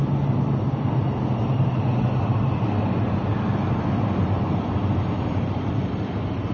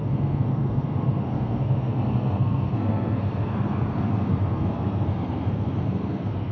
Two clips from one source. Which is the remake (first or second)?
second